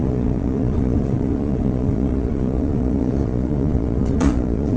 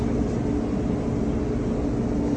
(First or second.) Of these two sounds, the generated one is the first